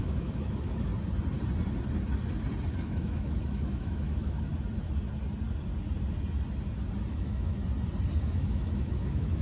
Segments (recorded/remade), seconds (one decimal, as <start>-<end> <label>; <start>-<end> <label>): 0.0-0.9 remade; 0.9-2.7 recorded; 2.7-4.5 remade; 4.5-7.1 recorded; 7.1-7.6 remade; 7.6-8.2 recorded; 8.2-9.4 remade

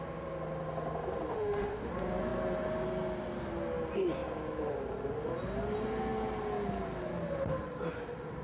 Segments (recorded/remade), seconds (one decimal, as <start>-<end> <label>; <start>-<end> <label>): 0.0-1.3 recorded; 1.3-1.9 remade; 1.9-8.4 recorded

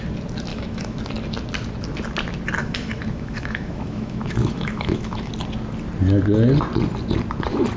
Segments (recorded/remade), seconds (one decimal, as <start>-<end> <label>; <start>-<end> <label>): 0.0-0.5 recorded; 0.5-1.0 remade; 1.0-2.6 recorded; 2.6-5.3 remade; 5.3-7.8 recorded